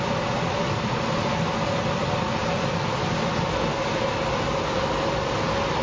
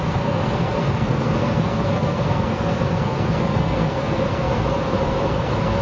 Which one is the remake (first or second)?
second